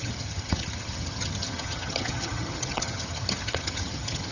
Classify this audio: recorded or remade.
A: remade